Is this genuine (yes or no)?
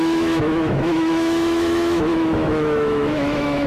no